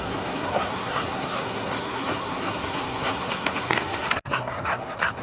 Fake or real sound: fake